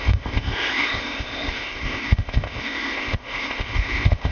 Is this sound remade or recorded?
remade